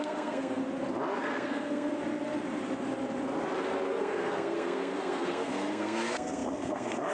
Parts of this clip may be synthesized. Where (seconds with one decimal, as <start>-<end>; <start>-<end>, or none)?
0.0-0.6; 1.2-1.9; 4.0-7.1